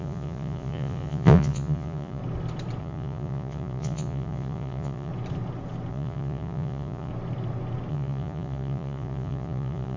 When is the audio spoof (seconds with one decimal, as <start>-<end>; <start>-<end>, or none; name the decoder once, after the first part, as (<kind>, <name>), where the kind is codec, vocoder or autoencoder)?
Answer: 0.0-2.2 (vocoder, Vocos); 2.8-5.1; 5.9-7.1; 7.9-10.0